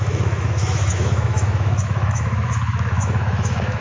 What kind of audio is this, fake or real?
fake